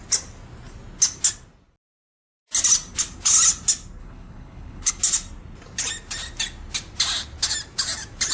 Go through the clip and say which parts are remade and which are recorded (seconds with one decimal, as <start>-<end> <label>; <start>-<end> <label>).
0.0-4.0 recorded; 4.0-4.9 remade; 4.9-8.3 recorded